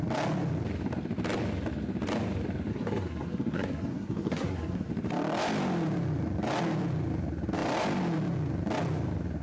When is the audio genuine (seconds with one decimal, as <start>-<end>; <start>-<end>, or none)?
0.0-2.7; 4.9-9.4